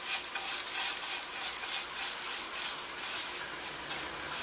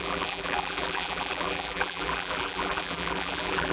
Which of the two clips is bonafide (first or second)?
first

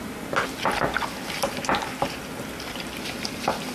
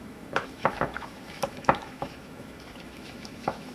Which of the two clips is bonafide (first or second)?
first